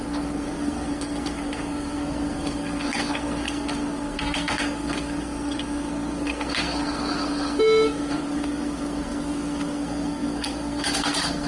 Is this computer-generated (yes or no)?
yes